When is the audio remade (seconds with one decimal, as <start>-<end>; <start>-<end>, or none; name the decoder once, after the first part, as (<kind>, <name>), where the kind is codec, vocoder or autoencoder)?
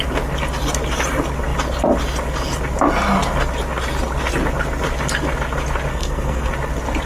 5.9-6.5 (codec, SNAC)